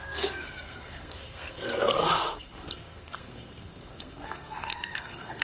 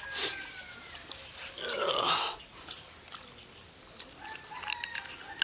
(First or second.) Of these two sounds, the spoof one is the first